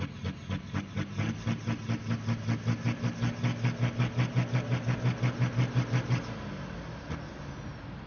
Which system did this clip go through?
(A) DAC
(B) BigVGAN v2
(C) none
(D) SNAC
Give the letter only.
C